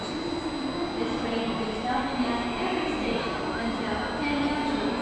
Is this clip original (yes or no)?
yes